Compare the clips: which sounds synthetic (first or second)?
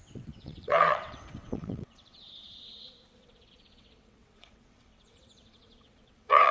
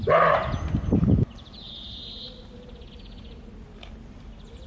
first